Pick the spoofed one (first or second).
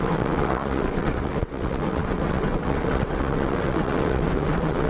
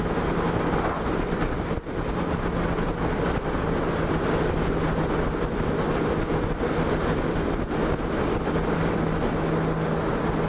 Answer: first